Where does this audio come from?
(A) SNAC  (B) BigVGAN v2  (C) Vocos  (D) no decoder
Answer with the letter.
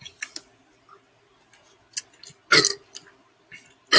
D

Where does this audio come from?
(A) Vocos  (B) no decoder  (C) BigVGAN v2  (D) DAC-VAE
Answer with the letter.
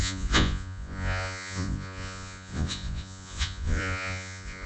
A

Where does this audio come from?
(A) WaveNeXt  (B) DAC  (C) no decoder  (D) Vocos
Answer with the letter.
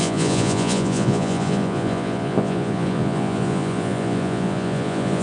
D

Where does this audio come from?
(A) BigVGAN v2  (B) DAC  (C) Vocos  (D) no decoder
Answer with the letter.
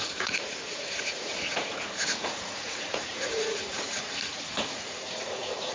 C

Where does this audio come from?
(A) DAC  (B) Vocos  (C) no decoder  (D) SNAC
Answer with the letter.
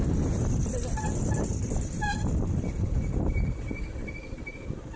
C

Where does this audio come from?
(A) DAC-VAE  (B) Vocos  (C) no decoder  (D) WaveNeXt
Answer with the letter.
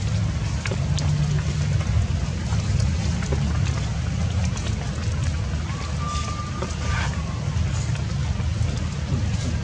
C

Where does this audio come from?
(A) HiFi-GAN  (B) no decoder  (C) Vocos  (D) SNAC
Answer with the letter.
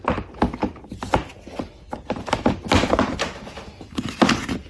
B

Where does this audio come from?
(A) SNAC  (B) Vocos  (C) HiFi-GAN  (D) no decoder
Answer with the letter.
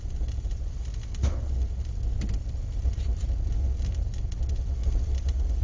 D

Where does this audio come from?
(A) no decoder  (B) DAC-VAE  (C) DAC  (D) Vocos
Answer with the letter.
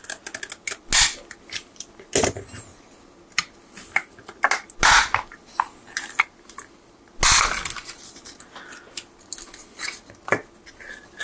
A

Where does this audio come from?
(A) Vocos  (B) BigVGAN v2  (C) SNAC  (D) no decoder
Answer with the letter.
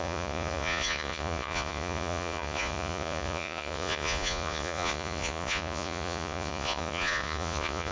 A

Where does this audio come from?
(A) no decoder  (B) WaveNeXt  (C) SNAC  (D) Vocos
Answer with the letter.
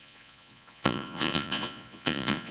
D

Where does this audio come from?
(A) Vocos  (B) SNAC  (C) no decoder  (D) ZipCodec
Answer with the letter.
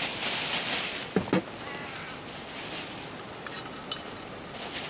C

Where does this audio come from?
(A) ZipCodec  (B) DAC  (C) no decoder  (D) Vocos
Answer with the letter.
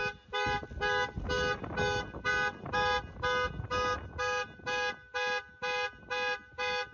C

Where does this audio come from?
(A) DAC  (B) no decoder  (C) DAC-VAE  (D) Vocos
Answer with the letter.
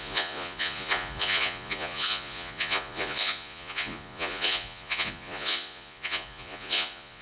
D